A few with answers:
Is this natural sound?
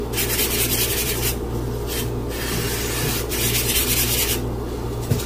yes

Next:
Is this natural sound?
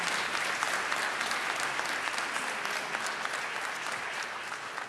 yes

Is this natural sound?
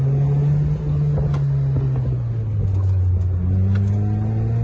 yes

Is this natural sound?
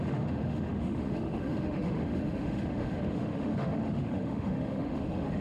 no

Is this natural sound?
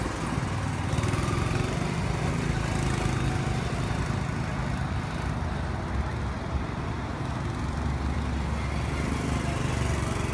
yes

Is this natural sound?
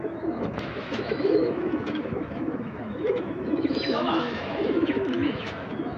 no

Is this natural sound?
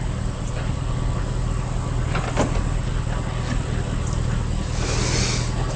yes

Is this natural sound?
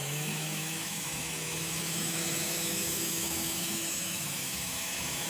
no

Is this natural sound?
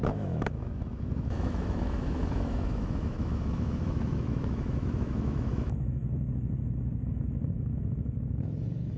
no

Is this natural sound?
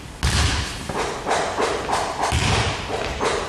yes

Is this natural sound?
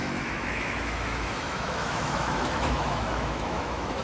no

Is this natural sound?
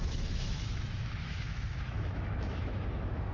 no